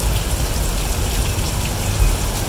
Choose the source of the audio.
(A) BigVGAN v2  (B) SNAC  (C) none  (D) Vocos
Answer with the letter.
C